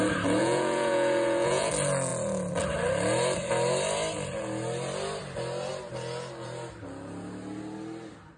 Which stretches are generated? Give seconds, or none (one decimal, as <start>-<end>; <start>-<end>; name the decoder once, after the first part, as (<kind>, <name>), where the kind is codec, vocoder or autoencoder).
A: 0.4-1.7 (vocoder, Vocos)